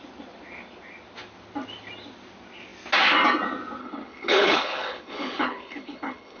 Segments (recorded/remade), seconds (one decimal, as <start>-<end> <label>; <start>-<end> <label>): 0.0-3.8 recorded; 3.8-6.4 remade